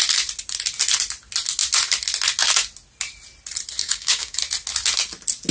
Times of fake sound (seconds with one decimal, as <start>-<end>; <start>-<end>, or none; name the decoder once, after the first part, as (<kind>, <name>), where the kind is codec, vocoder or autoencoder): 3.8-4.4 (codec, DAC)